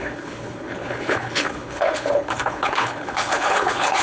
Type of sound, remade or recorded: remade